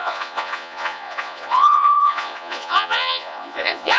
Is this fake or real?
fake